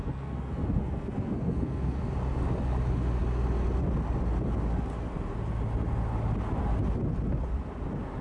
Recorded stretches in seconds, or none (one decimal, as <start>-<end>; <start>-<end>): 2.0-8.2